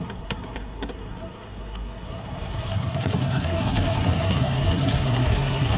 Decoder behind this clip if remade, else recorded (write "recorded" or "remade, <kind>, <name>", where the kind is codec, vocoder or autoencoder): remade, codec, SNAC